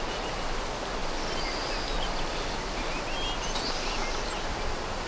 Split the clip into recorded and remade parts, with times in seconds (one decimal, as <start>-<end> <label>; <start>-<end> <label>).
0.0-5.1 recorded